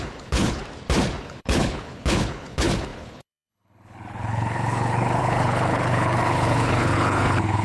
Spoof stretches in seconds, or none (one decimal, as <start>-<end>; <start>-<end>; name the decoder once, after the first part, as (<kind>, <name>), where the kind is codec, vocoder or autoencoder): 0.0-0.6 (codec, HILCodec); 1.2-7.6